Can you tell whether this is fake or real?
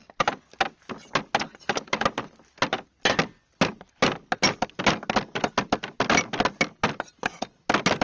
real